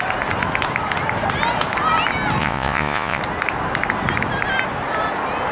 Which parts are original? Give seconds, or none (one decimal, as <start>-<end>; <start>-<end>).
0.0-2.4; 3.2-5.5

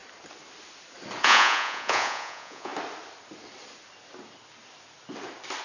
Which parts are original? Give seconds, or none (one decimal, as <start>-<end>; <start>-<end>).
0.0-1.2; 2.7-5.6

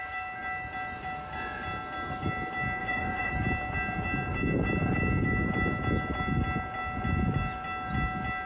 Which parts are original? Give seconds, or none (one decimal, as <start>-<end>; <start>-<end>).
0.0-2.8; 3.3-8.5